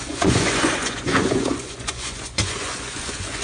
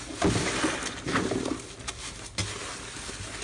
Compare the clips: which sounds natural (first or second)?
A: second